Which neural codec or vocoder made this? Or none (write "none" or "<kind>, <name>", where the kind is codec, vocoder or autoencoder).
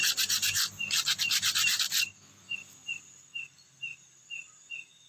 vocoder, BigVGAN v2